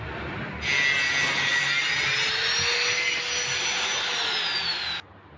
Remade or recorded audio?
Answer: recorded